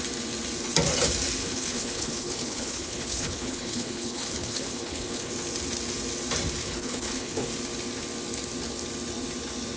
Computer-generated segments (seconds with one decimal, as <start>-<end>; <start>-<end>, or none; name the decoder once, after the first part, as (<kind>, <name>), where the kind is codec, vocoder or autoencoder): 1.4-5.3 (codec, HILCodec); 6.6-7.5